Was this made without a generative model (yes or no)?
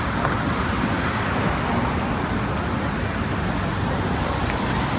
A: yes